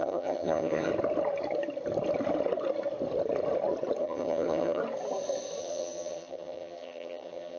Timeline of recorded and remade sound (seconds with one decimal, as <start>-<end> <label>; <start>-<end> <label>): 0.0-0.9 remade; 0.9-4.0 recorded; 4.0-4.8 remade; 4.8-5.6 recorded; 5.6-7.6 remade